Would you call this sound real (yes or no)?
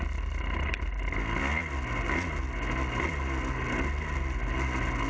yes